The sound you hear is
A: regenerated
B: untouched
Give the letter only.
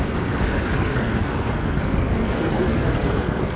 A